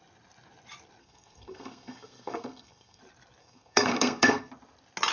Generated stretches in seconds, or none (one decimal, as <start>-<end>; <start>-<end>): 1.0-3.0; 3.4-4.5